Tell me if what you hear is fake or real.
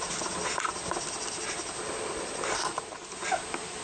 real